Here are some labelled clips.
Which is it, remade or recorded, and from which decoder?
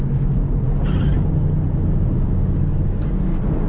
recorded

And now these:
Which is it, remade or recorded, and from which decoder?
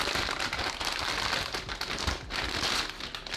recorded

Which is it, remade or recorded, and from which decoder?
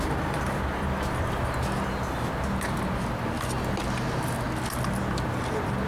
recorded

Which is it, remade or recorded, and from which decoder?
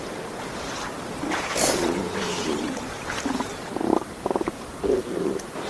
remade, vocoder, BigVGAN v2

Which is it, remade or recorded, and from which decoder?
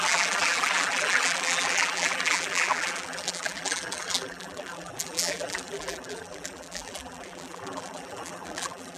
remade, vocoder, BigVGAN v2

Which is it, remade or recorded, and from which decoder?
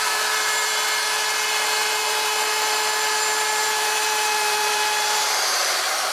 remade, vocoder, BigVGAN v2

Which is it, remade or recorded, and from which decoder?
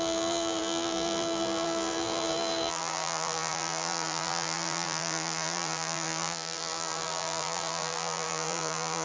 remade, vocoder, BigVGAN v2